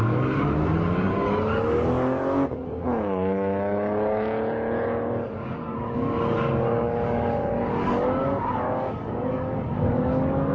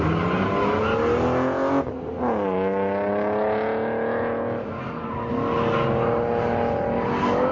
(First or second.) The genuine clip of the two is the second